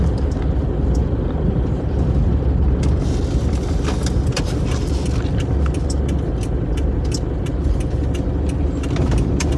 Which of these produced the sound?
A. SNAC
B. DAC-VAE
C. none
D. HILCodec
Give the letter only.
C